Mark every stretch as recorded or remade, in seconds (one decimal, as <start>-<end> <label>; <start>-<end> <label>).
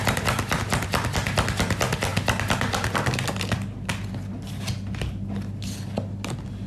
0.0-6.7 recorded